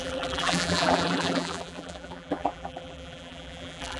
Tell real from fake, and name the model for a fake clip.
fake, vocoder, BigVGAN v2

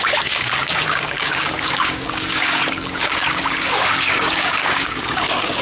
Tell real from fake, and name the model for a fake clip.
fake, codec, DAC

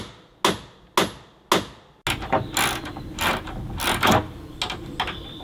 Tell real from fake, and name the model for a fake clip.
real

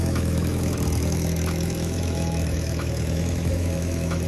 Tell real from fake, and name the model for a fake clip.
fake, autoencoder, DAC-VAE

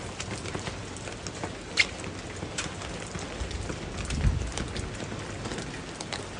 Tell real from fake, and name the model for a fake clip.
real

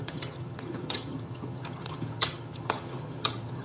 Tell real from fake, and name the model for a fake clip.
fake, vocoder, HiFi-GAN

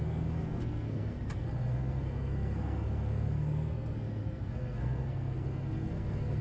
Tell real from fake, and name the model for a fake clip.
fake, codec, SNAC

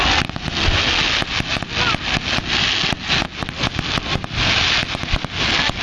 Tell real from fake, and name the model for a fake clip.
real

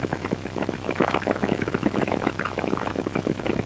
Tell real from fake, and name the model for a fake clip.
fake, autoencoder, DAC-VAE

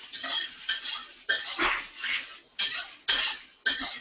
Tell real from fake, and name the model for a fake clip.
real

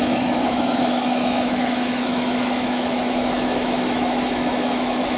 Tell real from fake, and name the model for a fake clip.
fake, autoencoder, DAC-VAE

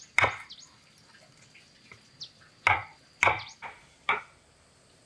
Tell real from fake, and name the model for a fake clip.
real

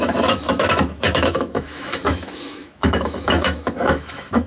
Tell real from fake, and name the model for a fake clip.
fake, autoencoder, DAC-VAE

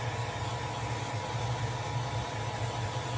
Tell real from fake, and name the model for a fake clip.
real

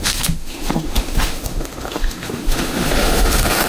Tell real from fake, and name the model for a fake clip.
fake, autoencoder, DAC-VAE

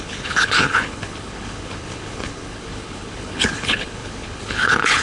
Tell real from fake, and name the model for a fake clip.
fake, codec, HILCodec